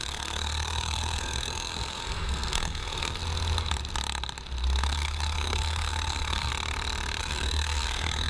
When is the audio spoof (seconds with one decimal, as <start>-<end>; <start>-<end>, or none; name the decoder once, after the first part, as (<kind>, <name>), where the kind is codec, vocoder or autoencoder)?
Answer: 0.0-3.2 (codec, SNAC); 4.8-6.5; 7.2-8.3